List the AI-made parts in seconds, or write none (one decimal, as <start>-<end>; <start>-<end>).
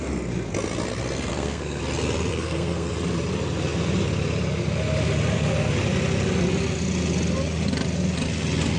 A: 1.3-1.8; 2.3-2.9